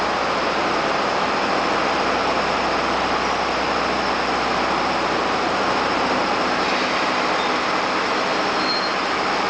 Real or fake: real